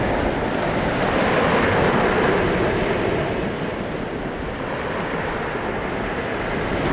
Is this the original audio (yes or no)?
yes